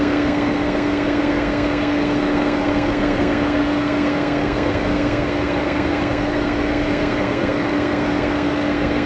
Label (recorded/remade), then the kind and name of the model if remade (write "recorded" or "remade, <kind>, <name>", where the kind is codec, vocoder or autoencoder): remade, codec, SNAC